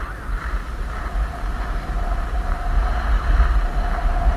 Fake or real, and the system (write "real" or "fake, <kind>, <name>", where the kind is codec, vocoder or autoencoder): real